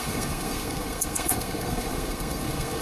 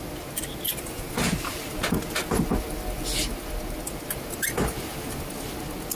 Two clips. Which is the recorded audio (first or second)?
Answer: second